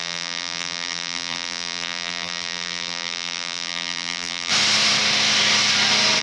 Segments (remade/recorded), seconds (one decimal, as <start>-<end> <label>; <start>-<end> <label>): 0.0-4.5 remade; 4.5-6.2 recorded